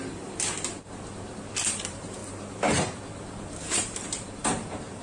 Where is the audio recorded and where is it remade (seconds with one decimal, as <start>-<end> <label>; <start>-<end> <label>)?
0.0-5.0 remade